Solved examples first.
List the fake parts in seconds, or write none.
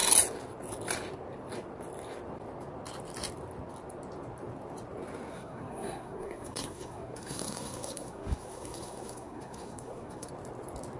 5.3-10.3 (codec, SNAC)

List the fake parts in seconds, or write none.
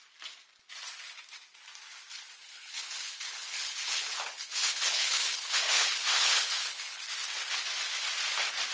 2.4-7.0 (codec, HILCodec)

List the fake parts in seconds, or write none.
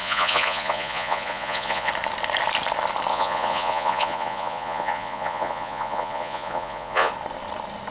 0.0-1.9 (vocoder, Vocos); 3.1-7.1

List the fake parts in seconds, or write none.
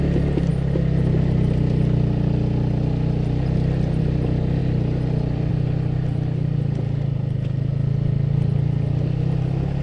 none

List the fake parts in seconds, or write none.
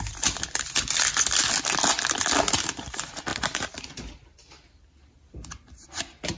none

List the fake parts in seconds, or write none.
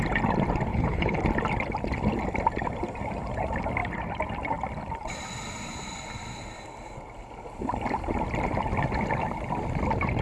0.7-1.2 (codec, HILCodec)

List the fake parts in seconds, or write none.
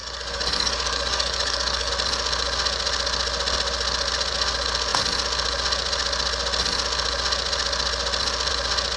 0.0-1.9 (codec, DAC)